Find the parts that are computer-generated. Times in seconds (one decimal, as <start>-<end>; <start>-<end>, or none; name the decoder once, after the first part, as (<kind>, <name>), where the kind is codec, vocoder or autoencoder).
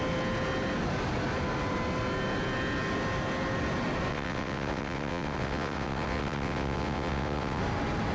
4.1-7.6 (vocoder, WaveNeXt)